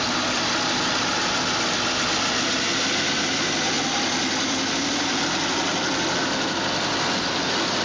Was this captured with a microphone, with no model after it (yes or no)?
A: yes